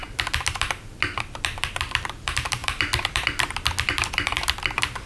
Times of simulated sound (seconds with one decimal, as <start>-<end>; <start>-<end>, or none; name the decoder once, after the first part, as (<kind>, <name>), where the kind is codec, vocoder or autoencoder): 1.7-2.6 (vocoder, BigVGAN v2); 4.1-5.1